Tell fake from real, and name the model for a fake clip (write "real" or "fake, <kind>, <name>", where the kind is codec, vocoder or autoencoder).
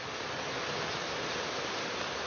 real